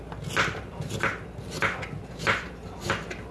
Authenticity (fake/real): real